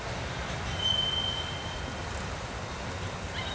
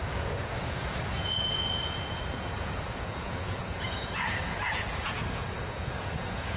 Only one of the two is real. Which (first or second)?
first